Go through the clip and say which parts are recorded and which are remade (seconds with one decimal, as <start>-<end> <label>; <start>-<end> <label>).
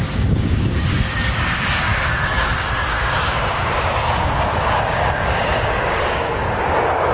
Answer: 0.0-7.1 remade